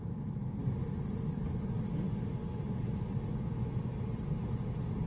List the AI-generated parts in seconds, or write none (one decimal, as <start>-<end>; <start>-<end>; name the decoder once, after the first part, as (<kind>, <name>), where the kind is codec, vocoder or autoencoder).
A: none